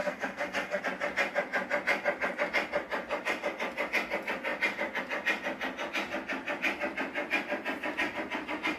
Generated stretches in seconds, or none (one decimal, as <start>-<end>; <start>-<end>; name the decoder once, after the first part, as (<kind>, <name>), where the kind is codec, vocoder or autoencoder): 0.0-0.8 (codec, SNAC)